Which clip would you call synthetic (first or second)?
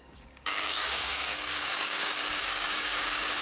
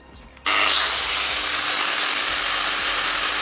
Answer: first